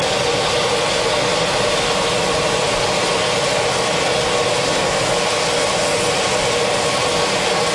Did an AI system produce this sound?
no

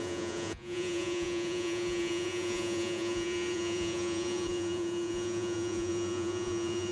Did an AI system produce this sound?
yes